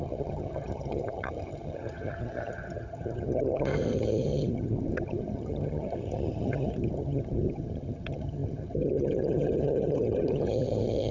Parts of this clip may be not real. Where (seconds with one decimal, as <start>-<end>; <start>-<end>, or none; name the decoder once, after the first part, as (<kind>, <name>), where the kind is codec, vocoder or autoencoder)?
0.0-11.1 (vocoder, HiFi-GAN)